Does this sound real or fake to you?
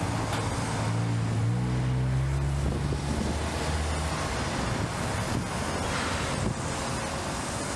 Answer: real